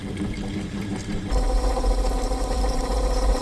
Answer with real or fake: fake